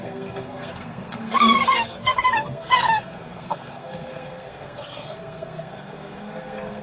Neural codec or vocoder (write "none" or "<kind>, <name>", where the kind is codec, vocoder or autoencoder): codec, SNAC